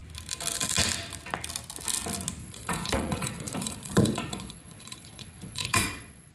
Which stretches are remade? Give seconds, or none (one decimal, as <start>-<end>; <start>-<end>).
2.4-6.3